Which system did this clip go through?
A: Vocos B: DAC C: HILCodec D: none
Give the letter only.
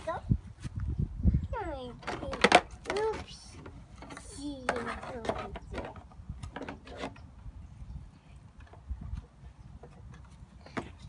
D